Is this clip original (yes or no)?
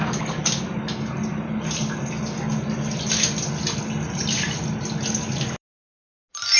yes